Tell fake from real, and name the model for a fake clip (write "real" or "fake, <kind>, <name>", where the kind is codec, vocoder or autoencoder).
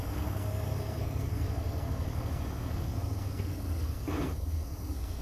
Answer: fake, codec, SNAC